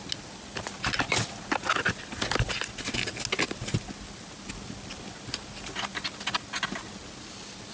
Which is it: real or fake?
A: real